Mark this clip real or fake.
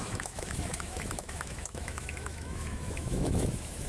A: fake